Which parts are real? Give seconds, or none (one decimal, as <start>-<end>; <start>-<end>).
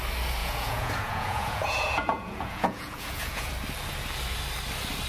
0.0-0.4; 3.5-5.1